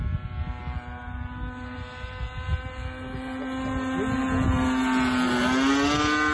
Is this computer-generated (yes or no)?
no